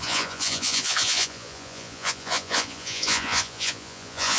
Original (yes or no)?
no